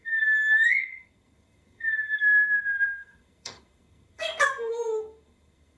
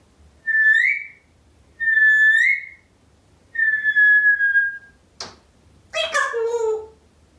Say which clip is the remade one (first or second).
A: first